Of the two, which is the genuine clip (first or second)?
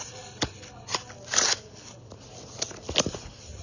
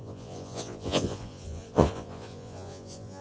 first